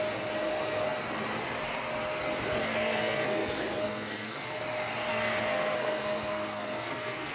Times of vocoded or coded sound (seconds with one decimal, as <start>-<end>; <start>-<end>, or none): 2.6-4.6; 5.1-7.3